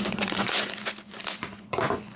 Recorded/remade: remade